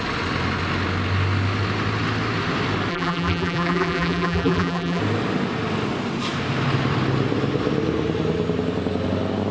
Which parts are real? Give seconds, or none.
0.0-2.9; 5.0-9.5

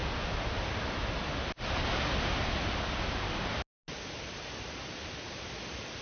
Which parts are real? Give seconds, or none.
0.0-6.0

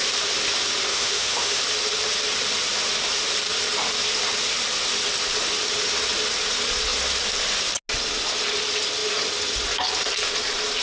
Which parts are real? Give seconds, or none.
0.0-0.9; 1.6-10.8